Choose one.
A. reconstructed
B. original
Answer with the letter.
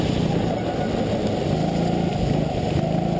B